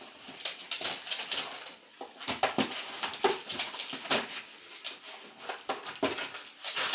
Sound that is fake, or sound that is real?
real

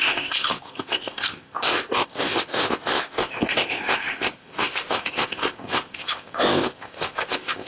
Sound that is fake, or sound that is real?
fake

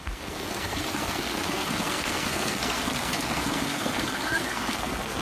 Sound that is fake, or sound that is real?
fake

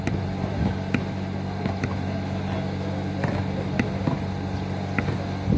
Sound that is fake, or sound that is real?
real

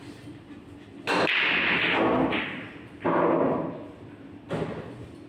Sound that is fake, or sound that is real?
real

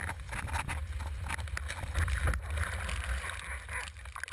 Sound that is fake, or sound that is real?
real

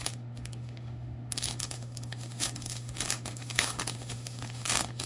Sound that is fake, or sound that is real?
fake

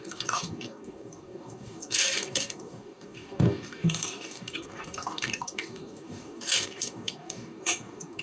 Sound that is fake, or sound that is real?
fake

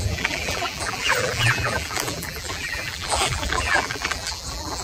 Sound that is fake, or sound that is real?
fake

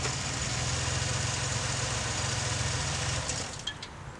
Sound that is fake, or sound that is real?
real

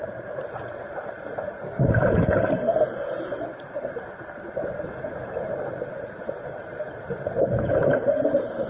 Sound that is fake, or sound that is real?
fake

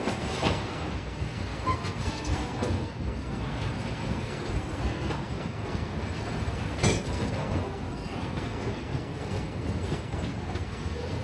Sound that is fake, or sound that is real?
fake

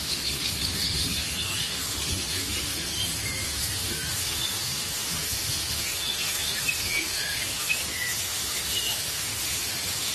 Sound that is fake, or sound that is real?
fake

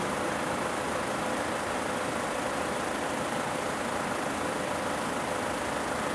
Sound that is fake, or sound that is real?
real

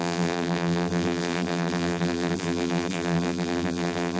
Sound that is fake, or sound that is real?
fake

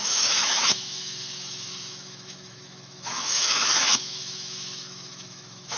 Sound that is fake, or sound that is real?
fake